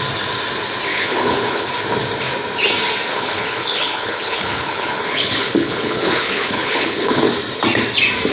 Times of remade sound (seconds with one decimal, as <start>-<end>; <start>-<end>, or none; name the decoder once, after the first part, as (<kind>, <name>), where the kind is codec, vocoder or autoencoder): 0.9-1.7 (codec, HILCodec); 3.1-7.2